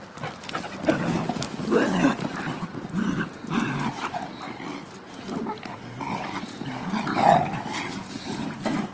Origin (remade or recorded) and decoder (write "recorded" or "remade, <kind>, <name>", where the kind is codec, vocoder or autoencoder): recorded